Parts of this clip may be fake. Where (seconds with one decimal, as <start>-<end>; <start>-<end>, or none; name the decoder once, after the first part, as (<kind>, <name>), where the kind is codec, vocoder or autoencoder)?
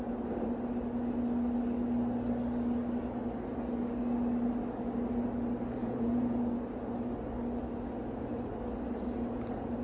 5.8-6.5 (vocoder, Vocos)